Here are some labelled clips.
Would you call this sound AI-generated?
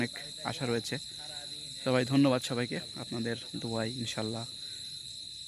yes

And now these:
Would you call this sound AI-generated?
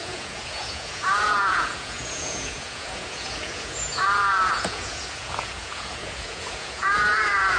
yes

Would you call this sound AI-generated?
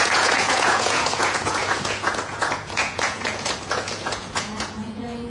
yes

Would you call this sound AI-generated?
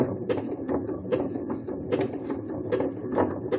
no